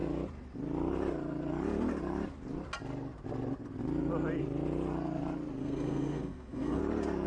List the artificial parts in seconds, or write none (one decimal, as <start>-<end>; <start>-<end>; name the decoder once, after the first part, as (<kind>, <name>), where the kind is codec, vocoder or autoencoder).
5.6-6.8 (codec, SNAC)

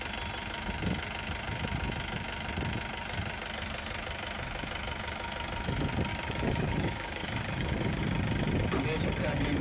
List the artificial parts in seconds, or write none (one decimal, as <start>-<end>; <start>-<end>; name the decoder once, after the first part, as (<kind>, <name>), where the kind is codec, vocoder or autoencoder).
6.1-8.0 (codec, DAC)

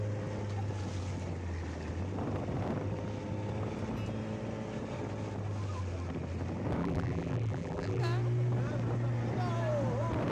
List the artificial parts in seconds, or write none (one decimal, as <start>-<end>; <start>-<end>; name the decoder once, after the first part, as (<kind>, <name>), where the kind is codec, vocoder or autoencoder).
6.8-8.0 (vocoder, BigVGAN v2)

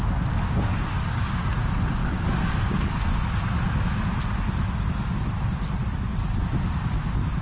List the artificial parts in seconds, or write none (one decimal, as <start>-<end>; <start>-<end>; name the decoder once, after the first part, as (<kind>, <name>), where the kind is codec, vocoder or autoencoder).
0.9-1.5 (codec, DAC); 2.0-3.2

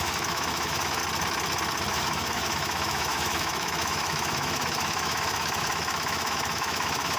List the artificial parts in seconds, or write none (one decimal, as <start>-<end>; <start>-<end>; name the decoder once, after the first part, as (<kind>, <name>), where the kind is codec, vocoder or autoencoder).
0.0-1.0 (autoencoder, DAC-VAE); 1.9-7.2

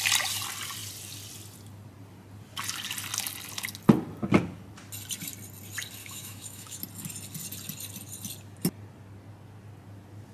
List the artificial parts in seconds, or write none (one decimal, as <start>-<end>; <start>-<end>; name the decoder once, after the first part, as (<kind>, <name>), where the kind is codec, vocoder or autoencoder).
6.0-6.8 (autoencoder, DAC-VAE)